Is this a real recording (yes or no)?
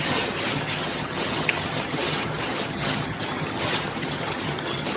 no